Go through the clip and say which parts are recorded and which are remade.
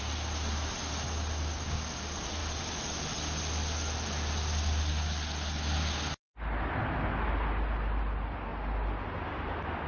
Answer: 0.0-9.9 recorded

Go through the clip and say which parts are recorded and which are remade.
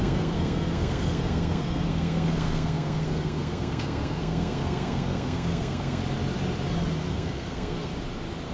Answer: 0.0-6.0 remade; 6.0-7.1 recorded; 7.1-7.9 remade; 7.9-8.5 recorded